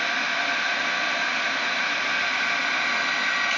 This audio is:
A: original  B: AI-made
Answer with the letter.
A